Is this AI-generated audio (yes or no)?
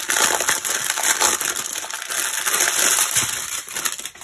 no